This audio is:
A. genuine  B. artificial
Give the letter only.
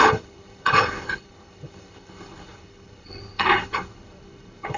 B